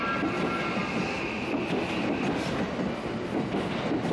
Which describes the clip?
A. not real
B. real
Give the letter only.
B